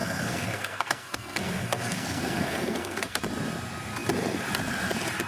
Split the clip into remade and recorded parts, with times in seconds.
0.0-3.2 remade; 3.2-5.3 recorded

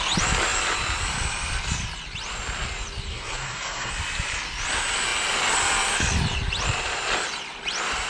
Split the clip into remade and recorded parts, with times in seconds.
0.0-3.1 recorded; 3.1-3.9 remade; 3.9-8.1 recorded